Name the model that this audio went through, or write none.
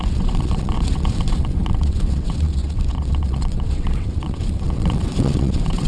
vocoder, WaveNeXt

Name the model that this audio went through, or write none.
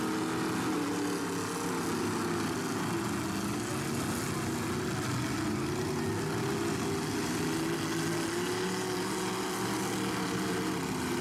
none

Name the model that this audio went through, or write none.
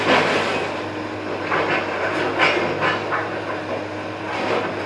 none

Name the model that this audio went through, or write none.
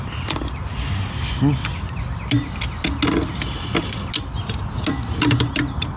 none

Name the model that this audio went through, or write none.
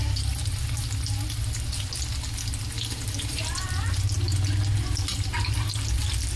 none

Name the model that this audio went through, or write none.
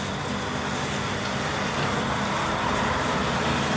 none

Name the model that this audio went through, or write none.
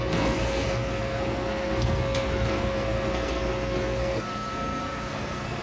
codec, SNAC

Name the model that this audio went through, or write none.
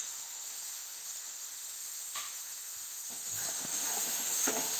autoencoder, DAC-VAE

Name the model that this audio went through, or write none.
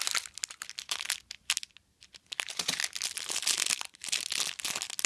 none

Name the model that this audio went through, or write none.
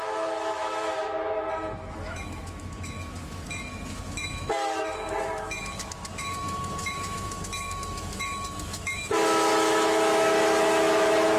autoencoder, DAC-VAE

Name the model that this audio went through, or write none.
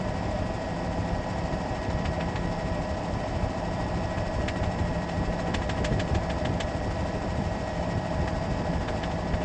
vocoder, BigVGAN v2